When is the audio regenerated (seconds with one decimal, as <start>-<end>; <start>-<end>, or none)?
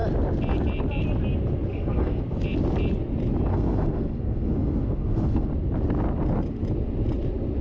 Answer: 1.7-2.2; 3.5-5.5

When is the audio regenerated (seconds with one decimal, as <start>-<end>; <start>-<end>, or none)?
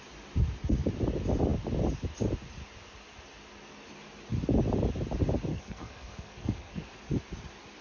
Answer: 5.5-6.9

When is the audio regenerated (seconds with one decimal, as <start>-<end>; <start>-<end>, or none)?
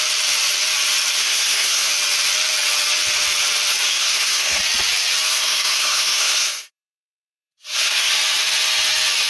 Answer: 1.2-1.9; 3.9-4.6; 5.3-8.1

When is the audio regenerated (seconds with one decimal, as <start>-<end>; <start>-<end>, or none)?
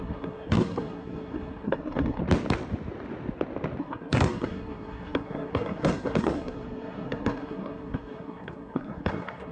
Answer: 0.0-2.2; 3.8-9.5